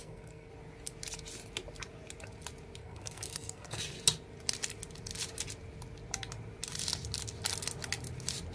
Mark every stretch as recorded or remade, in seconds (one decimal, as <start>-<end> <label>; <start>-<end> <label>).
0.0-0.5 remade; 0.5-2.8 recorded; 2.8-3.8 remade; 3.8-8.5 recorded